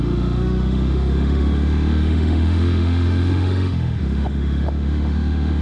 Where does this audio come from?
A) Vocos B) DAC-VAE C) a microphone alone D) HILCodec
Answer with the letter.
B